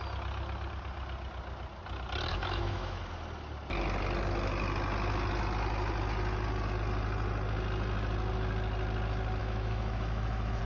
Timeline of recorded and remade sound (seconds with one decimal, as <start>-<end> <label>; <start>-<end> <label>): 0.0-2.3 recorded; 2.3-3.0 remade; 3.0-9.4 recorded; 9.4-10.6 remade